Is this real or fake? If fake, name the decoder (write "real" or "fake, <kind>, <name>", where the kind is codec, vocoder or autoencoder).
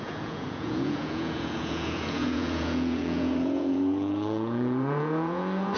fake, vocoder, Vocos